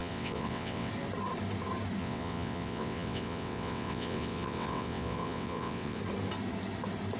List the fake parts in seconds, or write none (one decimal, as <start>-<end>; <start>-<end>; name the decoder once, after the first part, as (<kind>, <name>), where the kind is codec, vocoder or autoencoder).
0.0-0.9 (vocoder, WaveNeXt); 2.0-6.0